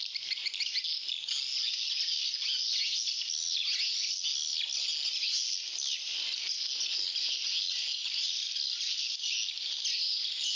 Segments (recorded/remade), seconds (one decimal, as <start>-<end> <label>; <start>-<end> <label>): 0.0-10.6 recorded